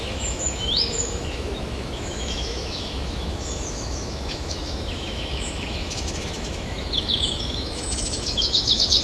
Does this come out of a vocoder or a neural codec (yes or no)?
yes